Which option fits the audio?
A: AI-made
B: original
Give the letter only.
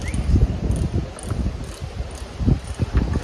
B